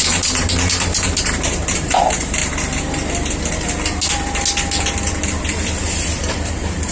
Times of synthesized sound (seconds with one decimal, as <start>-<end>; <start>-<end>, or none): 0.0-2.4; 6.5-6.9